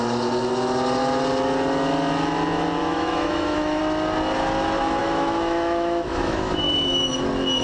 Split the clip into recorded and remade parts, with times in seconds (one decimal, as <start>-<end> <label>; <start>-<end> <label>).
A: 0.0-2.8 recorded; 2.8-3.8 remade; 3.8-5.0 recorded; 5.0-7.1 remade; 7.1-7.6 recorded